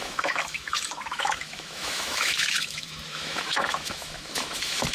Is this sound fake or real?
fake